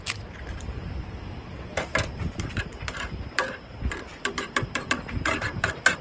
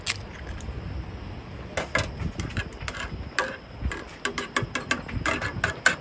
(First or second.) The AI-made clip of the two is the first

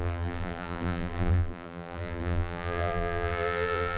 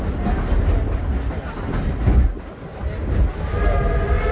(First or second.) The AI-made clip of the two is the first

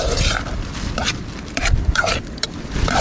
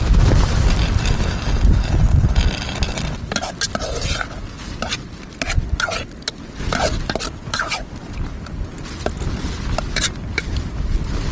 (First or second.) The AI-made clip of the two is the first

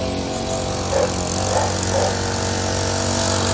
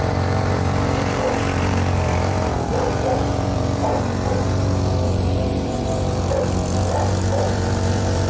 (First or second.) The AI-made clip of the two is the second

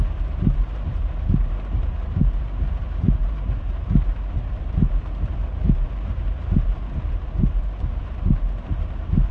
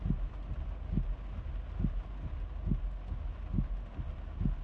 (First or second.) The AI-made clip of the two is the first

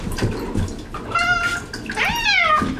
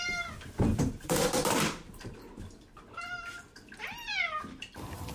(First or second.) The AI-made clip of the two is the second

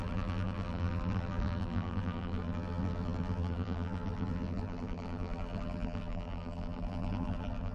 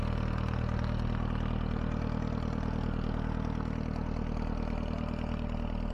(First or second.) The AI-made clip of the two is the first